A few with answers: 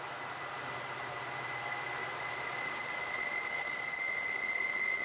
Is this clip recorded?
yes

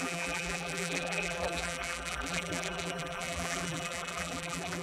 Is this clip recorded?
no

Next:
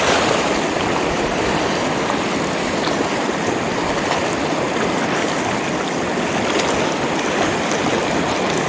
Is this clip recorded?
yes